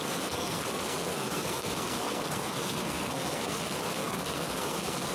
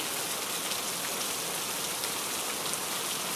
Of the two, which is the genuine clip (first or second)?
second